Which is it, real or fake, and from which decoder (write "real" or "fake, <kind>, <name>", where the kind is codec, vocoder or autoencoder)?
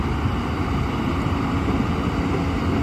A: fake, vocoder, BigVGAN v2